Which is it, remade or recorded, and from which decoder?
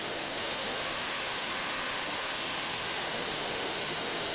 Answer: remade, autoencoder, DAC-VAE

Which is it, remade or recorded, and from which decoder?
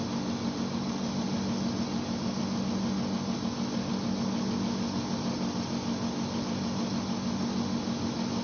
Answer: recorded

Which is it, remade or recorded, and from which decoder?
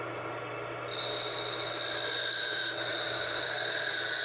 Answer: recorded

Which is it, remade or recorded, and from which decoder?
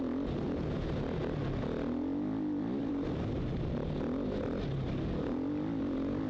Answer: recorded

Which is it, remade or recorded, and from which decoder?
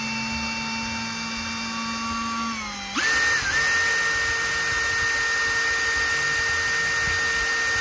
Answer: recorded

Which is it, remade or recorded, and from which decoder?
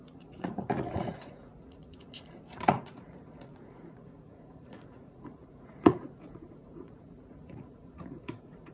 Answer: remade, vocoder, Vocos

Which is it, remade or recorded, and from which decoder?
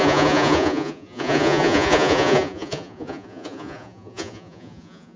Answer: remade, vocoder, Vocos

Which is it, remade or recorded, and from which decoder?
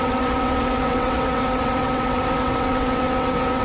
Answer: remade, vocoder, WaveNeXt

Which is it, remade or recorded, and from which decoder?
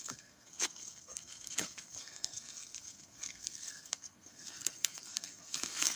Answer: remade, codec, SNAC